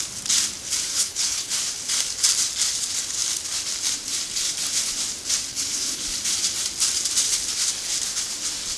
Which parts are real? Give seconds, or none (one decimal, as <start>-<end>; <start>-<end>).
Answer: 0.0-0.9; 1.5-5.5; 6.0-8.8